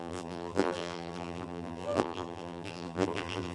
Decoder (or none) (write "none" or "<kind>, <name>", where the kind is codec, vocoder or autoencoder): vocoder, BigVGAN v2